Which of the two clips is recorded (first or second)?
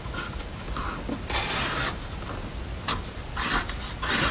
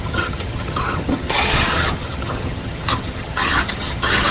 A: first